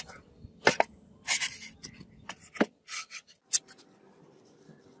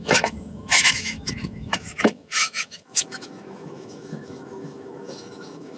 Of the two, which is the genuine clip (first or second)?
first